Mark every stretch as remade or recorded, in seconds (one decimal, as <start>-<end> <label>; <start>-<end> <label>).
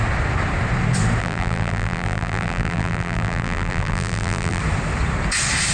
0.0-1.2 recorded; 1.2-4.6 remade; 4.6-5.7 recorded